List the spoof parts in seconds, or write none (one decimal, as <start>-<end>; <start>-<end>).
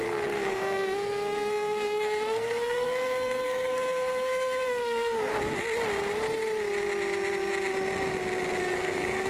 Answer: 0.0-5.3; 8.6-9.3